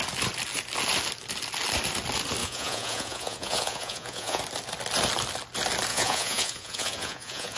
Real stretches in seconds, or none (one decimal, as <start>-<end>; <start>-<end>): 0.0-2.4; 4.4-5.9